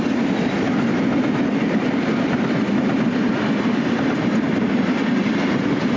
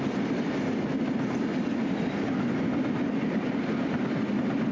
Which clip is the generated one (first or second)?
first